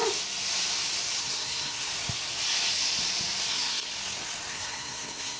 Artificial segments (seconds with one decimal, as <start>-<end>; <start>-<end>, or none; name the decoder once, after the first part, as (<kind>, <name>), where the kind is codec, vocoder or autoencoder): 1.2-1.9 (codec, SNAC); 3.5-3.9; 4.5-5.4